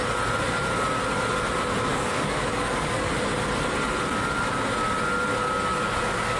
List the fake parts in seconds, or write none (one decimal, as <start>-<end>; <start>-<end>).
1.9-3.1; 5.7-6.4